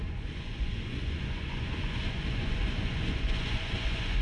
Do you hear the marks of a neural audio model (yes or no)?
yes